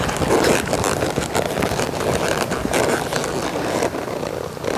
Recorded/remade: recorded